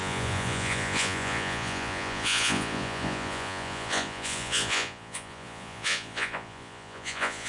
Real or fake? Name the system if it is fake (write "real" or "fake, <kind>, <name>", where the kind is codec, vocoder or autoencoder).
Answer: fake, vocoder, Vocos